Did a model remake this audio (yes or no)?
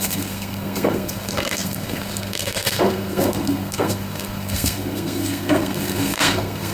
yes